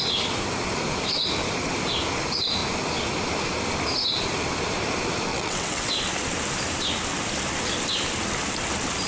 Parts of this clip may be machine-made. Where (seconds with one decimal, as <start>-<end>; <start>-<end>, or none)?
5.3-5.9